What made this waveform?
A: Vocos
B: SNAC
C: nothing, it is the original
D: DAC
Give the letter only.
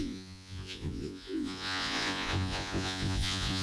A